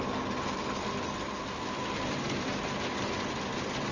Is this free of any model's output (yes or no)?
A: yes